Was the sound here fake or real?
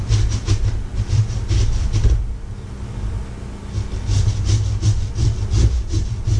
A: real